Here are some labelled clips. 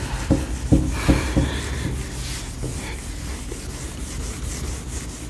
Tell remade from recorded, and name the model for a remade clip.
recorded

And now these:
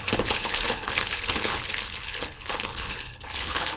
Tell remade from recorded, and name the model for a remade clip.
remade, codec, HILCodec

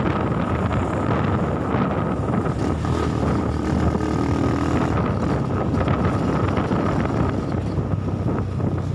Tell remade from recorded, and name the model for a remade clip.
recorded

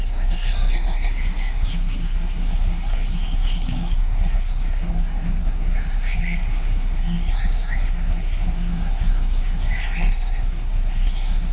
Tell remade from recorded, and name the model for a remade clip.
remade, codec, SNAC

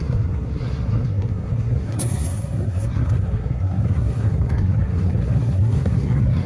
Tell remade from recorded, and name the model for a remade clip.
remade, codec, SNAC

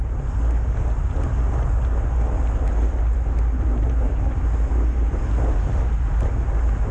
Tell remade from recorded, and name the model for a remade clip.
recorded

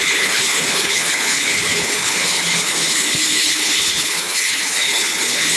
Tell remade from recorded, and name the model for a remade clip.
remade, codec, HILCodec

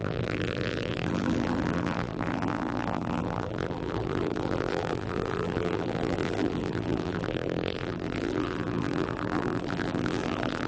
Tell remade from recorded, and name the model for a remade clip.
remade, vocoder, BigVGAN v2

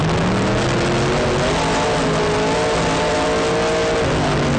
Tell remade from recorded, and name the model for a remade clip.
recorded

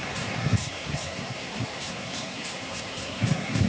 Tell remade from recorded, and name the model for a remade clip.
remade, codec, SNAC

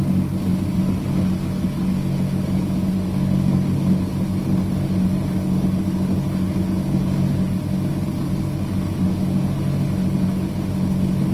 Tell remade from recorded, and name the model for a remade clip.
recorded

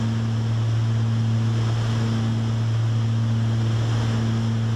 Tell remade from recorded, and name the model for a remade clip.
recorded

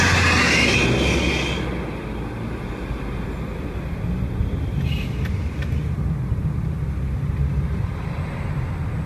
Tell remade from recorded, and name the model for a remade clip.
recorded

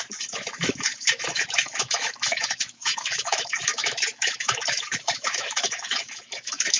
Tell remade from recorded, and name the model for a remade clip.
remade, autoencoder, DAC-VAE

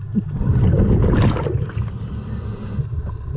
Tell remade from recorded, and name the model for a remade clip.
recorded